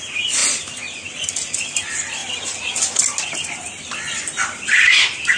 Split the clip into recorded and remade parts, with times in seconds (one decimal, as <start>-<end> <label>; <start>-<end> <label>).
0.0-5.4 recorded